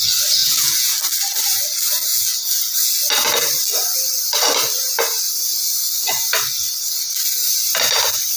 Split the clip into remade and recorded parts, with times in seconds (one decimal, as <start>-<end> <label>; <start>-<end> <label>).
0.0-0.4 recorded; 0.4-0.9 remade; 0.9-2.1 recorded; 2.1-2.9 remade; 2.9-8.4 recorded